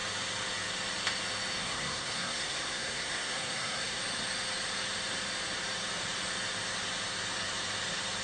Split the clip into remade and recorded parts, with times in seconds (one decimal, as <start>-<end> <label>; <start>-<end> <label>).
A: 0.0-1.6 recorded; 1.6-4.0 remade; 4.0-8.2 recorded

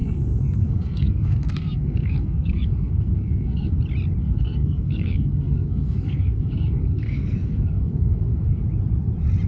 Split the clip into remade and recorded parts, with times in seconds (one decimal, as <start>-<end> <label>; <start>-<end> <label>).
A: 0.0-3.8 remade; 3.8-4.2 recorded; 4.2-8.6 remade; 8.6-9.5 recorded